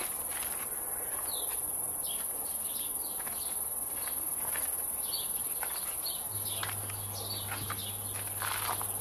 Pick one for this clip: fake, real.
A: real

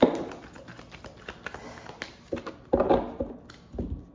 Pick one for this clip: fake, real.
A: real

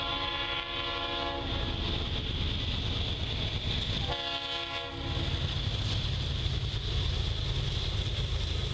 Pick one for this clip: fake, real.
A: real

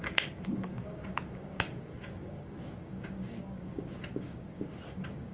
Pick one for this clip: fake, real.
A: fake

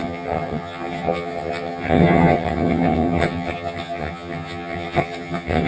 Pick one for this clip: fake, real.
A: fake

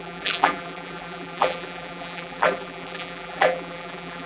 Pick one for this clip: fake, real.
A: fake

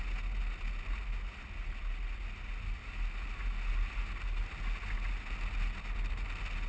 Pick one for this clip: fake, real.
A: real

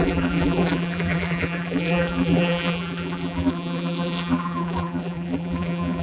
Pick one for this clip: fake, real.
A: fake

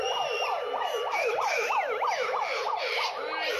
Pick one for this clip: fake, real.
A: real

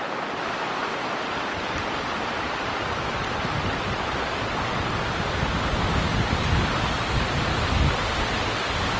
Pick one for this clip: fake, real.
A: real